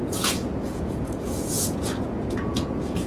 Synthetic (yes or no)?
yes